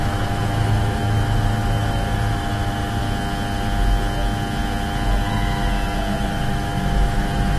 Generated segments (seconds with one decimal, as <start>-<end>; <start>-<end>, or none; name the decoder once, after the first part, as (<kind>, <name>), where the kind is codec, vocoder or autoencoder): 0.0-3.0 (autoencoder, DAC-VAE); 6.2-7.6